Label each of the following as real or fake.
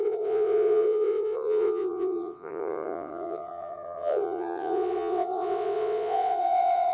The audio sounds fake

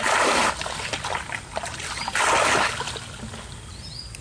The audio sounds real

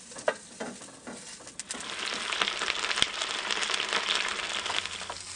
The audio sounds real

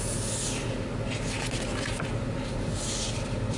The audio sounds real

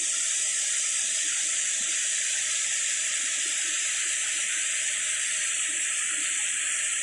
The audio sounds fake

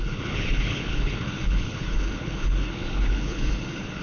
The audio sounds fake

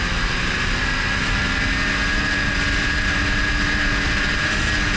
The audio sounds real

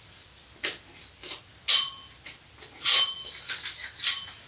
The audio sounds real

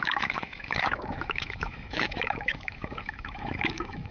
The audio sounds fake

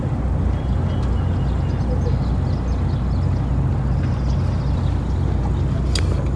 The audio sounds real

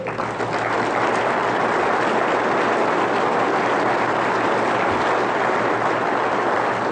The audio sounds real